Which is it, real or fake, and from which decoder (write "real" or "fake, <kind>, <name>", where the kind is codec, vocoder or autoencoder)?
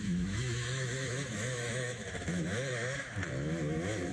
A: fake, autoencoder, DAC-VAE